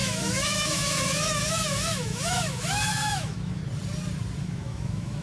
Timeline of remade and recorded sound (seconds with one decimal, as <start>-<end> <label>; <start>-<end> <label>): 0.0-3.6 remade; 3.6-4.4 recorded; 4.4-5.2 remade